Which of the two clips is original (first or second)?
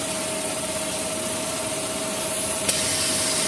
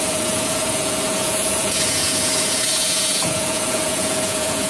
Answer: first